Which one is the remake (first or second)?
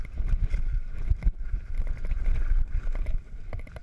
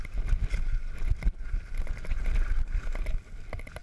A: first